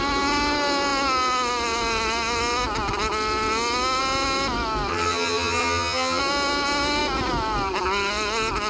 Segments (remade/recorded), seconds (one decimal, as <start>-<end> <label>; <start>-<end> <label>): 0.0-4.9 recorded; 4.9-6.2 remade; 6.2-8.7 recorded